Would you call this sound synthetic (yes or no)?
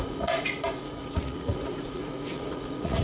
yes